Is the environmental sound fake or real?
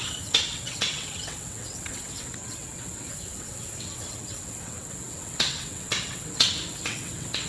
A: fake